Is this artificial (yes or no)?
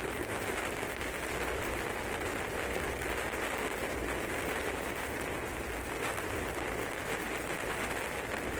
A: no